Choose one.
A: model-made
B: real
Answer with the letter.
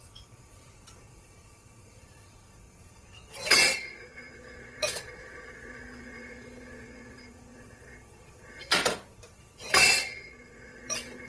A